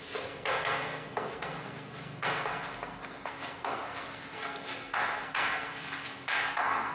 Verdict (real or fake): fake